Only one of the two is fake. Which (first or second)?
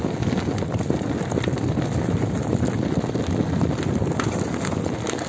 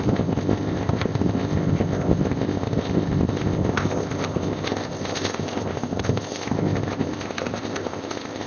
second